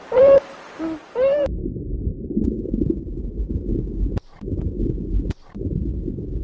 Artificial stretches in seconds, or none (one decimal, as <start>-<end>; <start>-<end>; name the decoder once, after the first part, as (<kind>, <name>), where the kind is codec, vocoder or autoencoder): 0.0-0.8 (vocoder, BigVGAN v2)